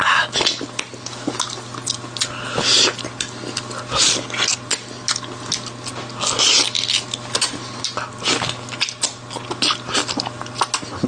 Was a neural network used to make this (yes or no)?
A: no